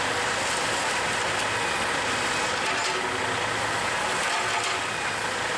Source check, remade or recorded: recorded